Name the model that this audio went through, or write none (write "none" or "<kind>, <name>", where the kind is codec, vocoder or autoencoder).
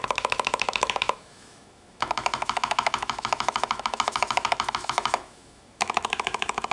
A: autoencoder, DAC-VAE